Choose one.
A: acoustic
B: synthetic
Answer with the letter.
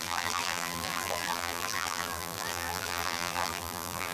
B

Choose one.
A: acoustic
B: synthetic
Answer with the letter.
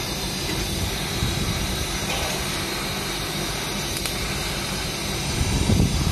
B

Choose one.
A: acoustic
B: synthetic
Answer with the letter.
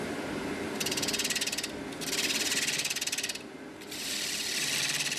A